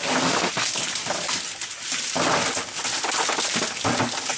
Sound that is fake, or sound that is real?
real